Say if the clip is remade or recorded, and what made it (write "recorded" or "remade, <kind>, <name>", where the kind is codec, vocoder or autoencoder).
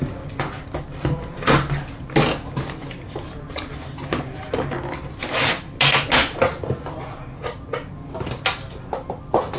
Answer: recorded